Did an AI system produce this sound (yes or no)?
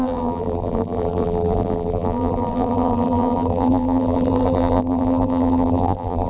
yes